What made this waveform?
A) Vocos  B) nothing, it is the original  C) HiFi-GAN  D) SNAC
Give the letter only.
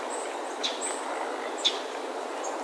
B